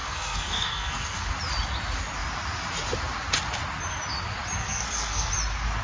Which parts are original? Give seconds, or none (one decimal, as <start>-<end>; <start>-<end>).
1.3-4.6; 5.3-5.8